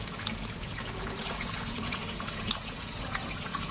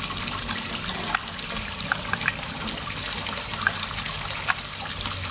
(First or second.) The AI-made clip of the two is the first